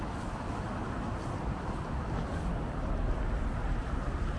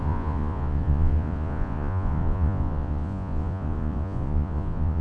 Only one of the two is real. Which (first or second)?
first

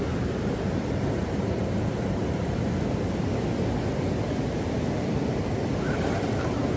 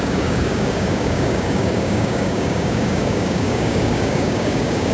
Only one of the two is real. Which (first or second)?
first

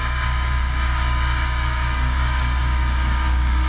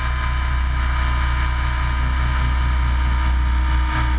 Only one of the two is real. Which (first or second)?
second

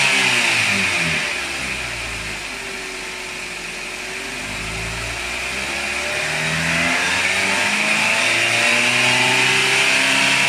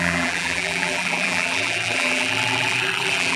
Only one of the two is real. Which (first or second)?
first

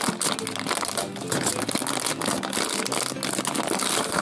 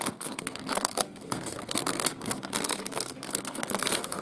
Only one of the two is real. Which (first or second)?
first